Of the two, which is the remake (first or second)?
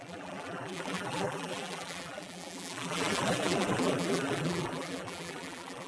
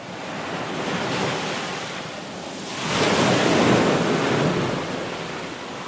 first